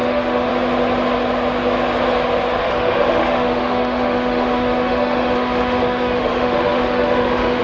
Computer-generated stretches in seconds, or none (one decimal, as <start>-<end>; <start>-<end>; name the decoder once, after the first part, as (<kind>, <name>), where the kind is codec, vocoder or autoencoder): 0.0-0.5 (autoencoder, DAC-VAE); 2.6-7.6